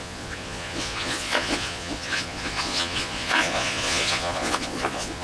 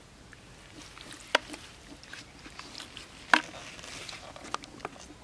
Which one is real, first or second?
second